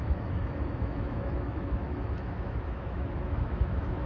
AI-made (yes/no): yes